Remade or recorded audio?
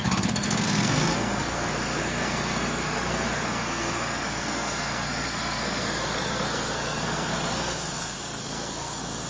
remade